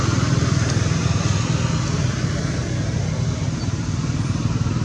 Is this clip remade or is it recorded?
recorded